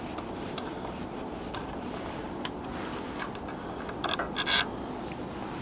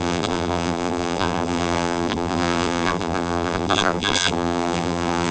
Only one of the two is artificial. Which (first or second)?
second